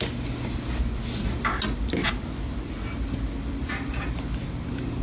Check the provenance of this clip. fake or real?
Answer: real